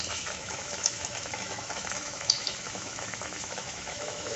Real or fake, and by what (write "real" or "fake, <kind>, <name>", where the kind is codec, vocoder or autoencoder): fake, autoencoder, DAC-VAE